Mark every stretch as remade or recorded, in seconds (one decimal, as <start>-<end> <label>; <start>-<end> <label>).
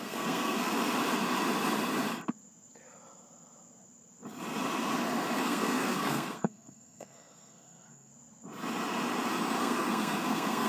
0.0-0.7 remade; 0.7-5.4 recorded; 5.4-8.1 remade; 8.1-9.6 recorded; 9.6-10.7 remade